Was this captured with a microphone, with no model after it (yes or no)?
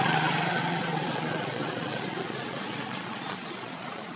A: no